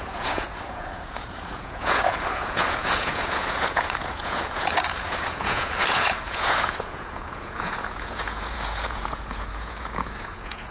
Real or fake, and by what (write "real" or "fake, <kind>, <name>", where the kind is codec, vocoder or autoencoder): fake, vocoder, Vocos